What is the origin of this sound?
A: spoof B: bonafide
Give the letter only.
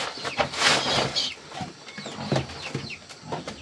B